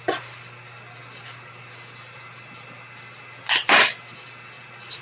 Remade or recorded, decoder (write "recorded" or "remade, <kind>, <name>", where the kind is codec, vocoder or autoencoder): recorded